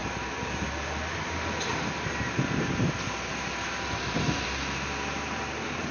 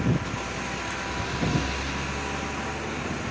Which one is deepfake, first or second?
first